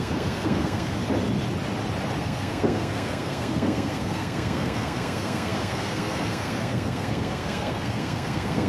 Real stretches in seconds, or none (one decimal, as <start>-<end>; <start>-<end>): 1.0-2.2